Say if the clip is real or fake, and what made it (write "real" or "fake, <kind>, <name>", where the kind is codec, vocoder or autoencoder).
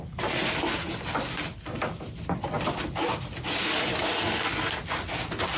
real